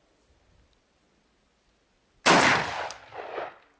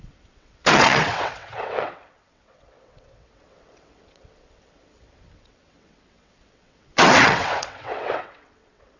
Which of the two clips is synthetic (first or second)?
second